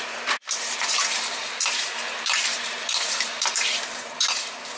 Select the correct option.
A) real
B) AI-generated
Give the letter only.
B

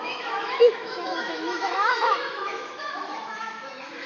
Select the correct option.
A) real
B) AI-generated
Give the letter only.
B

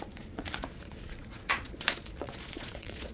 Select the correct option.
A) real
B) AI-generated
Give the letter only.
B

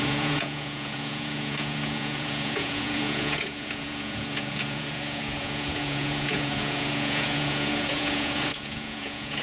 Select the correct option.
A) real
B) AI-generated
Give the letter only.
B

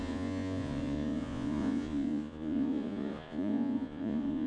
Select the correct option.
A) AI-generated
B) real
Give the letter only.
A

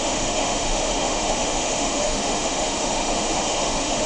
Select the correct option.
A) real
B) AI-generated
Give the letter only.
B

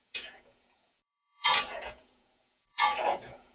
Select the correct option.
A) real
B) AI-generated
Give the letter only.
B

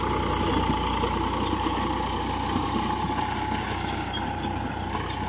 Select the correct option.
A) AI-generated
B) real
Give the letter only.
B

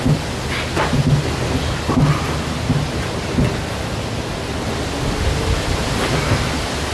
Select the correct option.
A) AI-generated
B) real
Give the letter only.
B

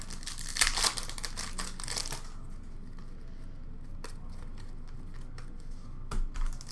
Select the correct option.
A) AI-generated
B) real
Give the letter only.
B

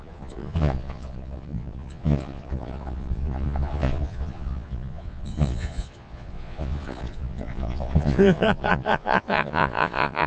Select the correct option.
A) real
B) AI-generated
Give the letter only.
B